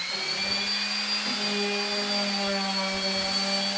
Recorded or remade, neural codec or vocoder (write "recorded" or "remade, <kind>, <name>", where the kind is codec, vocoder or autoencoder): recorded